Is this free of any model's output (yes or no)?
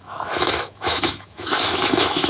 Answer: no